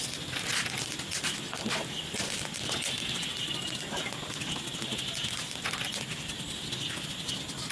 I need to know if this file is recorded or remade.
recorded